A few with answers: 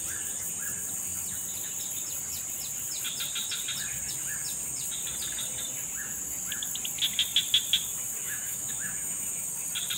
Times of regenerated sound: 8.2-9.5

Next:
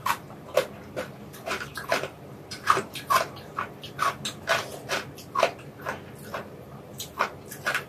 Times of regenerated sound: 0.0-3.5; 6.4-7.9

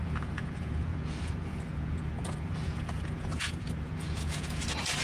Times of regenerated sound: 0.0-5.0

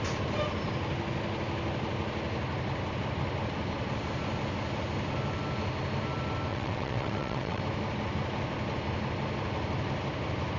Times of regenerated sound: 6.5-7.6

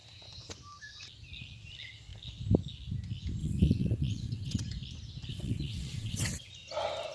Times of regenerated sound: 3.4-4.6; 5.3-6.5

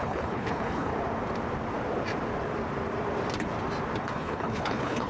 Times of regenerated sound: 0.0-0.9; 4.0-5.1

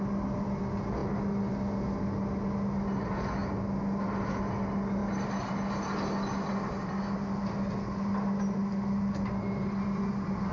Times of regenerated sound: none